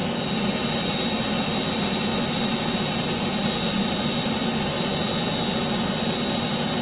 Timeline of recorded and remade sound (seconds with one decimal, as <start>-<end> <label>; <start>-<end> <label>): 0.0-6.8 recorded